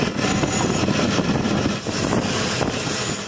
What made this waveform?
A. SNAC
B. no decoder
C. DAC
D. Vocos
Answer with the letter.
B